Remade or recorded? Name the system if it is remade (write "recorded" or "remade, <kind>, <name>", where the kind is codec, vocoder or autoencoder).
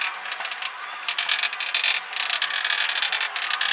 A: recorded